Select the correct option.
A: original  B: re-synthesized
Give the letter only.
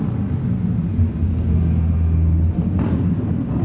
A